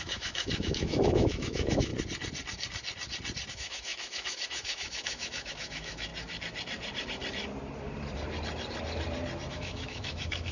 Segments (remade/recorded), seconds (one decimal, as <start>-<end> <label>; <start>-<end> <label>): 0.0-1.9 remade; 1.9-3.5 recorded; 3.5-6.1 remade; 6.1-9.5 recorded; 9.5-10.5 remade